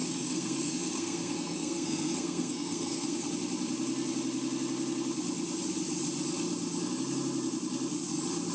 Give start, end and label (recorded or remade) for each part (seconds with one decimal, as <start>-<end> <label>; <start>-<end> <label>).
0.0-3.3 remade; 3.3-8.5 recorded